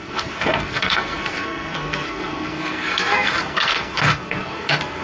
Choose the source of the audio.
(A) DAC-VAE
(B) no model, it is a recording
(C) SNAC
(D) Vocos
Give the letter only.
C